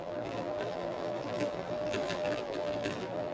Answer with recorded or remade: remade